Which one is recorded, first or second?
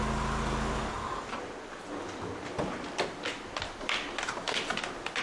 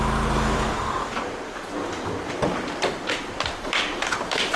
first